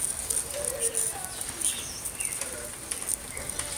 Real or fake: real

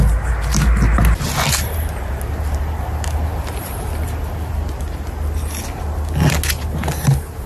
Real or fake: real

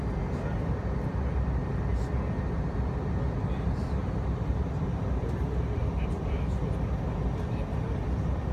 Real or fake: real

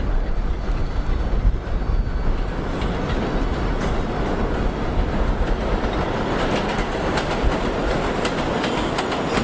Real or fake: real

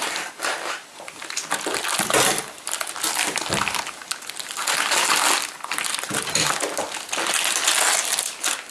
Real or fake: real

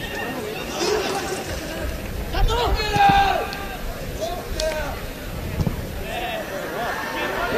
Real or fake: real